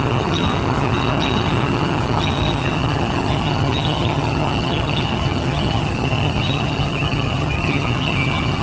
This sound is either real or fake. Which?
fake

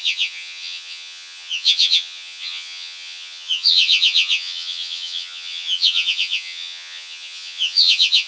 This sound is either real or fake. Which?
fake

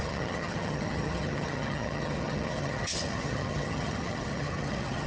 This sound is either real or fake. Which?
fake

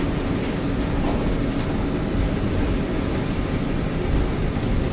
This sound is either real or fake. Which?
real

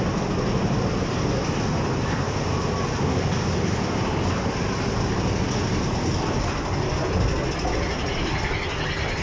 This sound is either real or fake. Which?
real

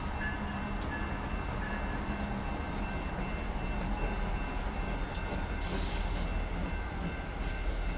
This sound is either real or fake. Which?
real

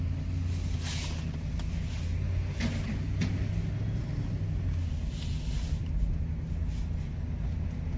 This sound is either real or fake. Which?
real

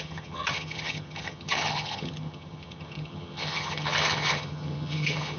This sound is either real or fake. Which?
fake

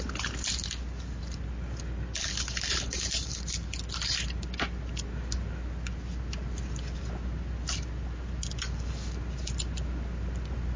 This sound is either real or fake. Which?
real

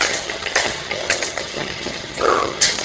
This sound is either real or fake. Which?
fake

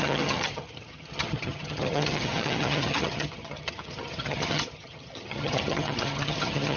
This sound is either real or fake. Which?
fake